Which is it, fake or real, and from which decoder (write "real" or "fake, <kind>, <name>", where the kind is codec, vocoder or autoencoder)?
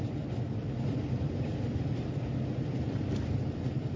real